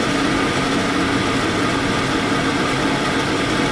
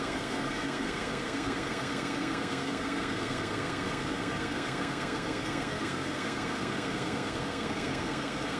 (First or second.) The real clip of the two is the first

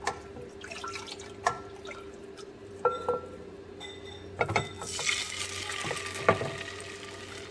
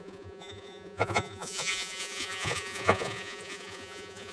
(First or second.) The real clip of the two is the first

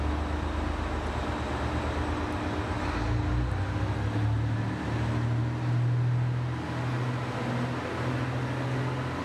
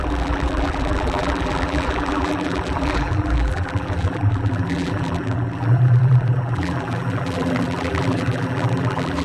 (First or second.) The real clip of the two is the first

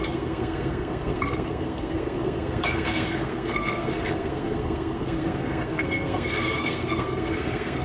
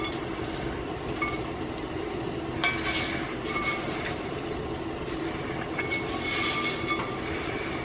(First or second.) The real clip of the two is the second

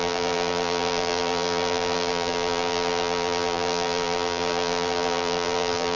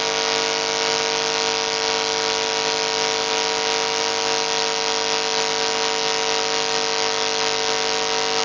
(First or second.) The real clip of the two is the second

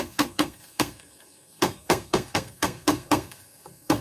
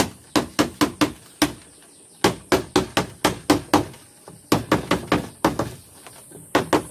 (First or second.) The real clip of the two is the second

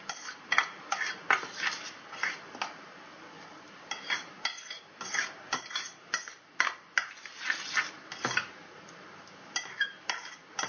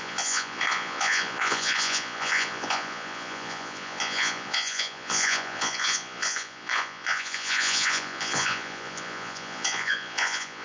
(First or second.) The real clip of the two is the first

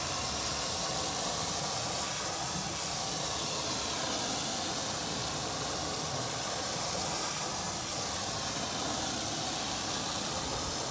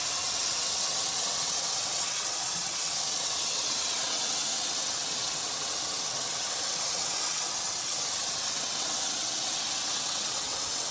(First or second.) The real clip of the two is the first